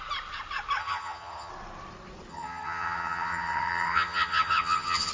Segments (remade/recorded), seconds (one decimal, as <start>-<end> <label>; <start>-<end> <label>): 0.0-0.8 recorded; 0.8-1.5 remade; 1.5-2.3 recorded; 2.3-5.1 remade